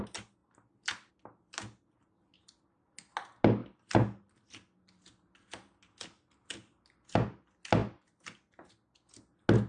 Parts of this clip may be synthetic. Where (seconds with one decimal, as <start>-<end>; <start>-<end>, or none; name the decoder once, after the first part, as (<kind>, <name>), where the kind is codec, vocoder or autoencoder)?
none